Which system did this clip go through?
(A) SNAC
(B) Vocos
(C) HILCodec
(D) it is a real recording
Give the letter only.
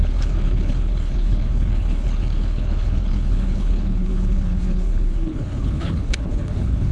C